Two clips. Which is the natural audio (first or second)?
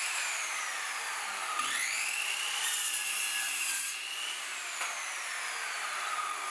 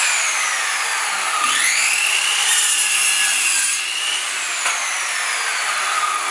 second